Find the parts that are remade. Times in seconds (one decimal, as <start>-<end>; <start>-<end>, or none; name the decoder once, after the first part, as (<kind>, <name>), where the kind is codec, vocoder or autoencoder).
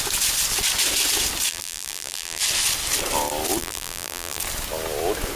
1.5-2.4 (vocoder, BigVGAN v2); 3.6-4.4